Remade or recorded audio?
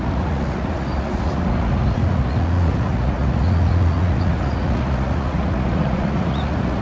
remade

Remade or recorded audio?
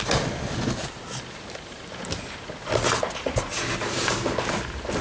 recorded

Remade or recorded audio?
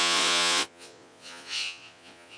remade